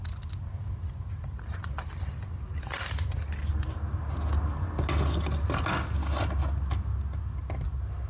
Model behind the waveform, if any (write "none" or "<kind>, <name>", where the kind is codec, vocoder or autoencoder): none